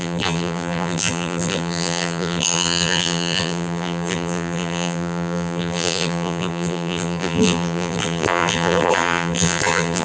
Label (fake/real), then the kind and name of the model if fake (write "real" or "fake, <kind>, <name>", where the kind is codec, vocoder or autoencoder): fake, vocoder, BigVGAN v2